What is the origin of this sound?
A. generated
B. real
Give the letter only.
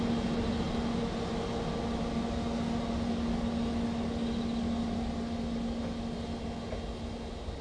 B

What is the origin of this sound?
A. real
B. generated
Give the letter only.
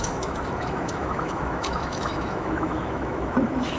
B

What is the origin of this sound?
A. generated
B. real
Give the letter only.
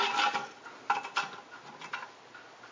B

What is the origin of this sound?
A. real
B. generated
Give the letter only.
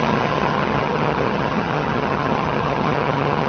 B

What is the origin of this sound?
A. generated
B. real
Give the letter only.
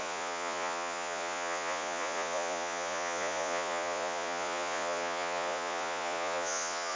A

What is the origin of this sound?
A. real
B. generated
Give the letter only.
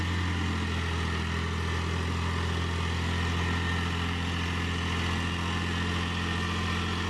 A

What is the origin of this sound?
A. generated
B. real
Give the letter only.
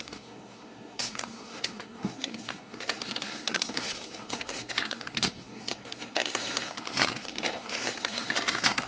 A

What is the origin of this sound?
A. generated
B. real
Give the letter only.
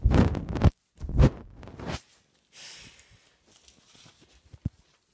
B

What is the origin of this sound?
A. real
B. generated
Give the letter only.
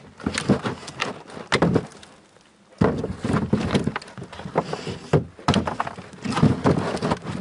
A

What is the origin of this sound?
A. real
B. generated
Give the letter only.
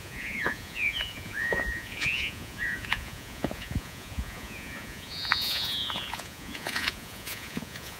B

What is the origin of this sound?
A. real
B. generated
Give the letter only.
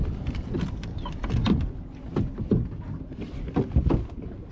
A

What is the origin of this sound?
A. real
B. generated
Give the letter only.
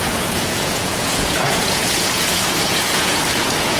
B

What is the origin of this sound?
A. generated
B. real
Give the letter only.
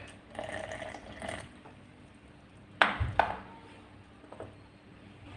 B